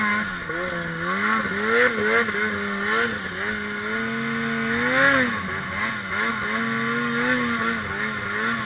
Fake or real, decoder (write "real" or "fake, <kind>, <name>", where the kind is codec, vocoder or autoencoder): real